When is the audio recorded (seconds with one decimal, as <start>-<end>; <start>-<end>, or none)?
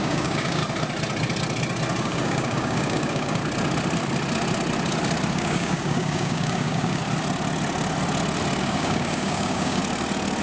0.6-2.0; 3.4-5.3; 7.0-8.6; 9.8-10.4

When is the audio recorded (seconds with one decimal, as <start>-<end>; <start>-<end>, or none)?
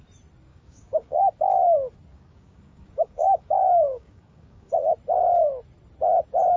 0.0-0.5; 1.3-2.1; 4.7-6.6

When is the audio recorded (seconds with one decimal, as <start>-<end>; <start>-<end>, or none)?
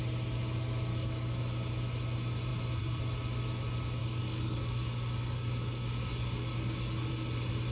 0.0-0.9; 1.4-4.0; 7.1-7.7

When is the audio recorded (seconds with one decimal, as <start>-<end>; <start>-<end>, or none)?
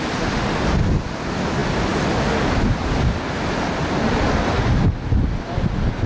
0.0-6.1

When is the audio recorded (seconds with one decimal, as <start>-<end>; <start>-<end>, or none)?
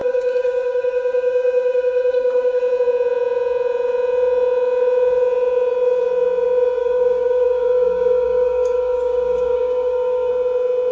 2.6-6.8; 10.3-10.9